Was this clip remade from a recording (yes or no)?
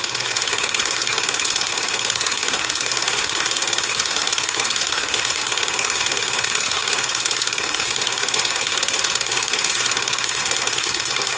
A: yes